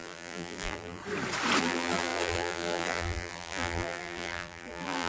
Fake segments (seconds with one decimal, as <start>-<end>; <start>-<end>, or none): 0.0-1.0; 1.6-5.1